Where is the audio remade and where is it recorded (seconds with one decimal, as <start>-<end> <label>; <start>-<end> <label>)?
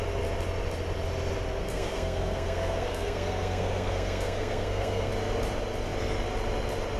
0.0-1.6 recorded; 1.6-5.1 remade; 5.1-7.0 recorded